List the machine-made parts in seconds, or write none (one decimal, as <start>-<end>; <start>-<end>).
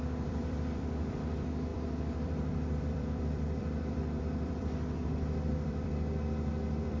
0.0-7.0